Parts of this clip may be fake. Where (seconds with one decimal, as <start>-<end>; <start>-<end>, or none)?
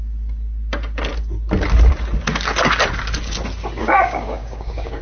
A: 3.8-5.0